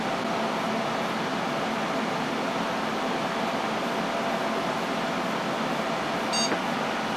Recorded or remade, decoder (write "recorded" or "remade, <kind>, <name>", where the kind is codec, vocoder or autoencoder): recorded